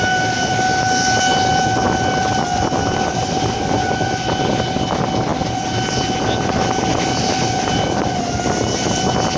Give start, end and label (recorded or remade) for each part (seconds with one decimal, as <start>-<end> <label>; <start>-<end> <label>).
0.0-9.4 recorded